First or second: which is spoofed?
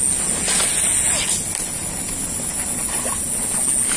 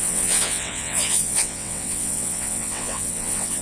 second